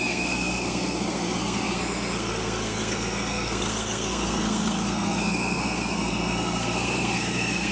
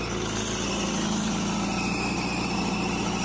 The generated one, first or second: first